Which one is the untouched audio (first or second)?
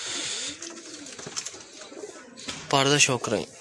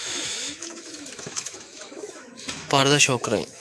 first